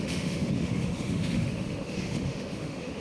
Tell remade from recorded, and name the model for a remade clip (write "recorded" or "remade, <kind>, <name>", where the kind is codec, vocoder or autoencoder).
remade, autoencoder, DAC-VAE